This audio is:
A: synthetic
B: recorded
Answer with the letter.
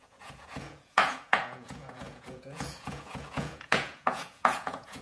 A